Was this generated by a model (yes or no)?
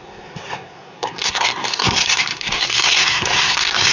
yes